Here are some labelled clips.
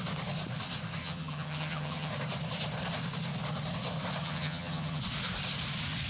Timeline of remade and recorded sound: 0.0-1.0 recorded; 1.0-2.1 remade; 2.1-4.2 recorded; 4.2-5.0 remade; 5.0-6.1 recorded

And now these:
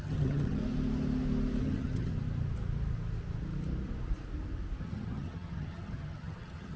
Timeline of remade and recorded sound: 0.0-0.6 remade; 0.6-1.6 recorded; 1.6-2.1 remade; 2.1-4.8 recorded; 4.8-6.8 remade

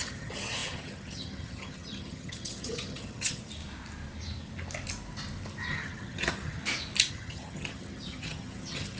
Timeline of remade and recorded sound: 0.0-3.4 remade; 3.4-5.7 recorded; 5.7-6.6 remade; 6.6-7.1 recorded; 7.1-9.0 remade

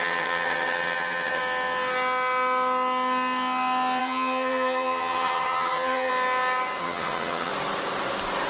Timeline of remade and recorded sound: 0.0-1.4 remade; 1.4-4.0 recorded; 4.0-6.1 remade; 6.1-6.8 recorded; 6.8-7.5 remade; 7.5-8.5 recorded

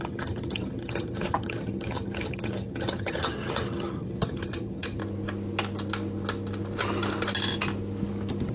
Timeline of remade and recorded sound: 0.0-5.0 remade; 5.0-8.5 recorded

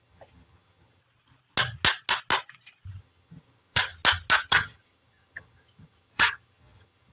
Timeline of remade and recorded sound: 0.0-1.0 remade; 1.0-3.0 recorded; 3.0-3.9 remade; 3.9-4.5 recorded; 4.5-7.1 remade

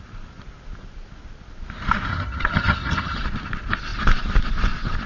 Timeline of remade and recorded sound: 0.0-2.1 recorded; 2.1-3.2 remade; 3.2-5.1 recorded